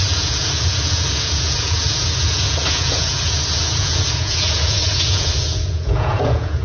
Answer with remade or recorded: remade